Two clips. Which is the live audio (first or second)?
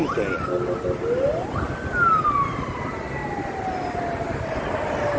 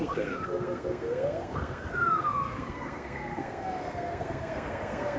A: first